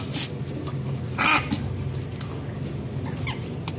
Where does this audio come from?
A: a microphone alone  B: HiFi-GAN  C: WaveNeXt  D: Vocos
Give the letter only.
A